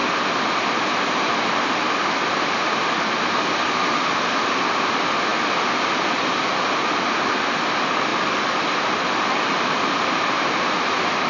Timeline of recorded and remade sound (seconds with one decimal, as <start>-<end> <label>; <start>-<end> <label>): 0.0-11.3 recorded